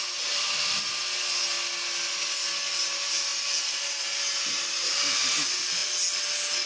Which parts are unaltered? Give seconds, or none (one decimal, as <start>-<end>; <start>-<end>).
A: 0.0-6.7